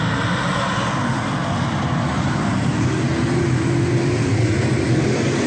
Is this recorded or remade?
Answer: recorded